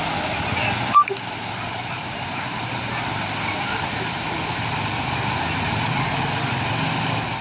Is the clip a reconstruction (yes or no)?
no